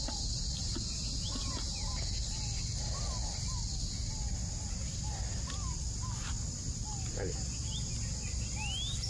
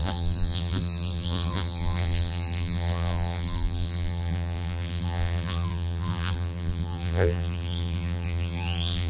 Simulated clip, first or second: second